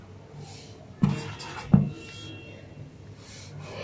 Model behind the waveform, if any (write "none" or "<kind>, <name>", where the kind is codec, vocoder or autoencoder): none